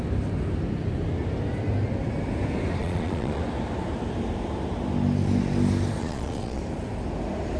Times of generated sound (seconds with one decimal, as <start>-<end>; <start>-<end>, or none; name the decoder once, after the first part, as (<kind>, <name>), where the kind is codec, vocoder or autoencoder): 2.8-3.4 (vocoder, Vocos); 6.0-6.6